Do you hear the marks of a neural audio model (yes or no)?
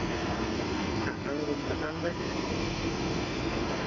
yes